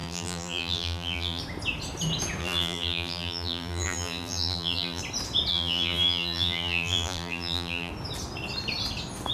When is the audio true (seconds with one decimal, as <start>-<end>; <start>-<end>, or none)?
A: 1.4-2.4; 5.0-5.5; 7.9-9.3